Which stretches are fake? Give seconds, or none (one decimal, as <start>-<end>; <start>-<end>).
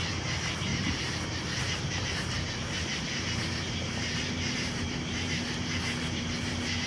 0.7-1.6; 2.9-6.3